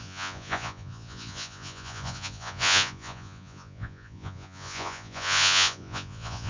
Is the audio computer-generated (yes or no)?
yes